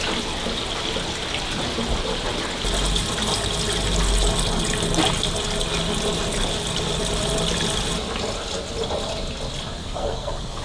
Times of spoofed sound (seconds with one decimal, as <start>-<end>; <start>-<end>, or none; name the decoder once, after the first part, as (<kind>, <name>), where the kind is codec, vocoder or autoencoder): 9.8-10.6 (codec, SNAC)